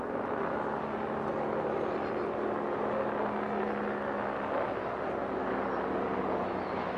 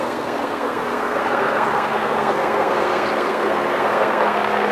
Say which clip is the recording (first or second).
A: first